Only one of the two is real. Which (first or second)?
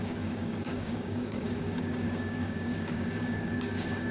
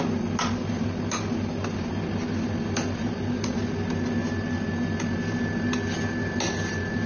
second